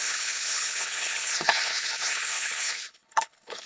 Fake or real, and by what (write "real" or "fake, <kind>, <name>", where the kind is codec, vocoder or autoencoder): fake, codec, HILCodec